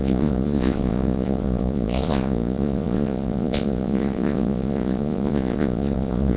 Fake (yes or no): yes